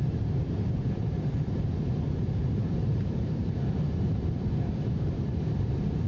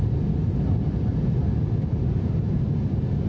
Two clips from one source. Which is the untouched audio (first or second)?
second